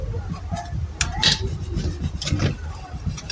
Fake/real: real